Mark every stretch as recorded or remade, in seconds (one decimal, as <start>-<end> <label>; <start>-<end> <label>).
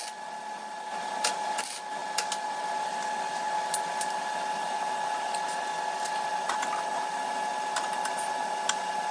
0.0-9.1 recorded